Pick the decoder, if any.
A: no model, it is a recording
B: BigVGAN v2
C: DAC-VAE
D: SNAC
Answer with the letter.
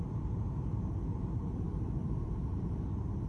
B